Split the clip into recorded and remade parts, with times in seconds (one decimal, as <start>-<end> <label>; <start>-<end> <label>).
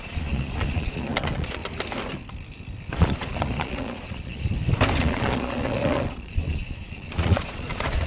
0.0-1.6 remade; 1.6-2.9 recorded; 2.9-4.5 remade; 4.5-5.0 recorded; 5.0-8.1 remade